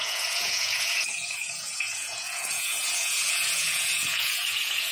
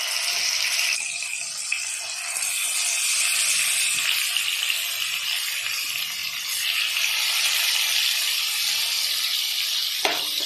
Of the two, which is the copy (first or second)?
first